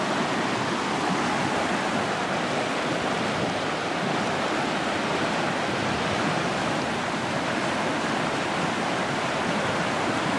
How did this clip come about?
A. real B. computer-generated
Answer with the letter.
A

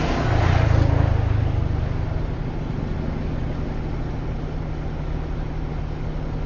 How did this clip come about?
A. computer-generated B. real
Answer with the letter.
B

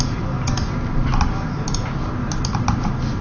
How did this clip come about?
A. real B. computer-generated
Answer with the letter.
A